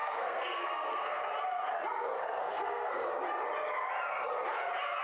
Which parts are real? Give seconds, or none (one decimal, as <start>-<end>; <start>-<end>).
1.2-2.4; 3.1-5.0